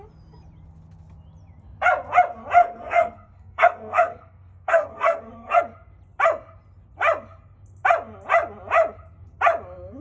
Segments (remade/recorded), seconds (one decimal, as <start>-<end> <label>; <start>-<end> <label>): 0.0-2.6 recorded; 2.6-5.6 remade; 5.6-10.0 recorded